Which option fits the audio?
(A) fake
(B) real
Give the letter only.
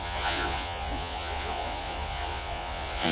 A